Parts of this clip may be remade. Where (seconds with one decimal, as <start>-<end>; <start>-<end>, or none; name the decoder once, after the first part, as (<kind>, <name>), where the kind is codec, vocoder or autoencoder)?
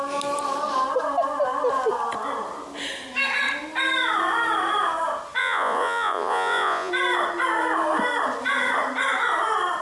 5.4-6.9 (vocoder, Vocos)